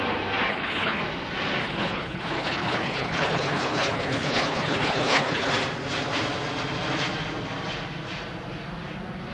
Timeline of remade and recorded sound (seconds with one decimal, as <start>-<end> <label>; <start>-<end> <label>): 0.0-0.5 recorded; 0.5-1.0 remade; 1.0-1.6 recorded; 1.6-5.5 remade; 5.5-9.3 recorded

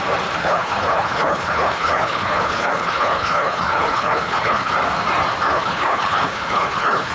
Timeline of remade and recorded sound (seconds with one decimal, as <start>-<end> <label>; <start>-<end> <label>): 0.0-0.4 recorded; 0.4-4.7 remade; 4.7-5.5 recorded; 5.5-7.1 remade

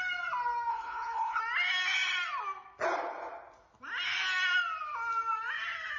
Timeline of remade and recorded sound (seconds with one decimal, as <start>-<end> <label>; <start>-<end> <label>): 0.0-0.7 recorded; 0.7-1.4 remade; 1.4-6.0 recorded

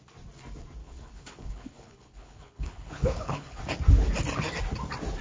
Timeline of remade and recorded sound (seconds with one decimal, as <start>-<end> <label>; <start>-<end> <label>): 0.0-0.8 recorded; 0.8-3.6 remade; 3.6-5.2 recorded

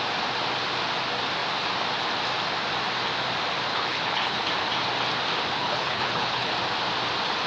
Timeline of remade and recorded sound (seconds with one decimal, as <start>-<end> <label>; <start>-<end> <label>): 0.0-3.7 recorded; 3.7-4.5 remade; 4.5-5.6 recorded; 5.6-6.5 remade; 6.5-7.5 recorded